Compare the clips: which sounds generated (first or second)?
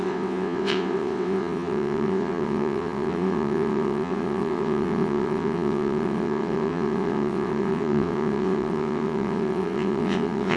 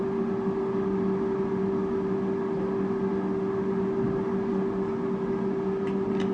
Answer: first